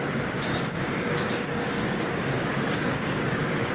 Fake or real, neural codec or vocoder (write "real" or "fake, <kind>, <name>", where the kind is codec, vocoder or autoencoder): fake, codec, DAC